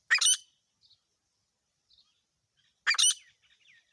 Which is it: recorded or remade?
recorded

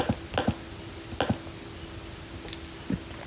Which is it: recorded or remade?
recorded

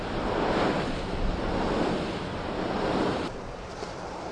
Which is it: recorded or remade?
recorded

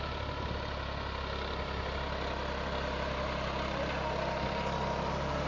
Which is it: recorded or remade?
recorded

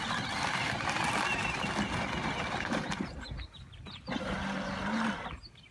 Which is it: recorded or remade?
recorded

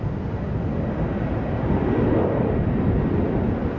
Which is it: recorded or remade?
recorded